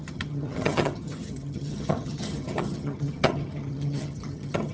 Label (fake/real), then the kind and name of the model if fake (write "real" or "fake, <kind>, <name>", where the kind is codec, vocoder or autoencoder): fake, vocoder, HiFi-GAN